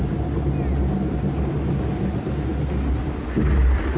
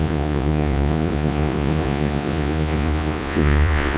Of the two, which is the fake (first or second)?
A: second